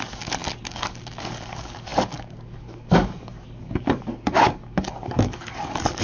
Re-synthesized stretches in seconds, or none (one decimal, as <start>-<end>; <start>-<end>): 0.0-6.0